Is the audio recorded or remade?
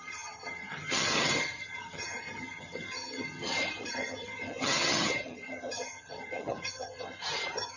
remade